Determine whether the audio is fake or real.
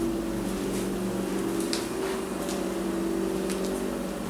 real